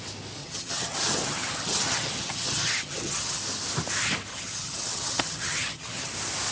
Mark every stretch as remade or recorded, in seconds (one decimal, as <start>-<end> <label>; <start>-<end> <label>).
0.0-0.4 recorded; 0.4-3.4 remade; 3.4-4.3 recorded; 4.3-6.1 remade; 6.1-6.5 recorded